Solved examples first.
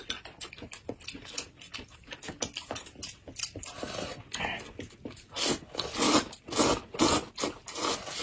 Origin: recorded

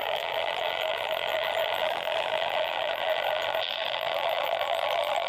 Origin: remade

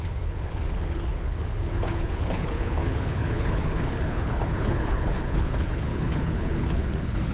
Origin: remade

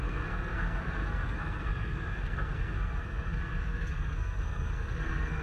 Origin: remade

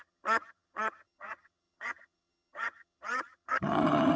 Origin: remade